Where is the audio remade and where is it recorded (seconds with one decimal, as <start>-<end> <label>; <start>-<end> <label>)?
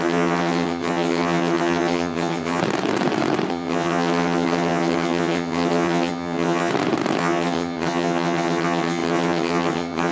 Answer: 0.0-2.6 remade; 2.6-3.5 recorded; 3.5-6.7 remade; 6.7-7.2 recorded; 7.2-10.1 remade